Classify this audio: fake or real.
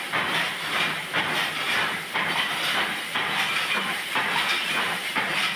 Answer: fake